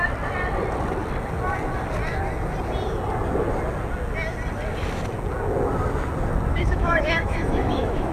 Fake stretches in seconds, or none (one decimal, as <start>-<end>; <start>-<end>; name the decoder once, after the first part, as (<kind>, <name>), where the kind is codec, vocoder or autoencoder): 6.5-8.1 (autoencoder, DAC-VAE)